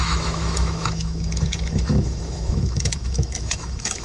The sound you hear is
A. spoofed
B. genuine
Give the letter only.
A